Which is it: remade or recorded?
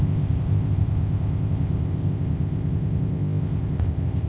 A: remade